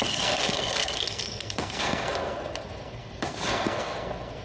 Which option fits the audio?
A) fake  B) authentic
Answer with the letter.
A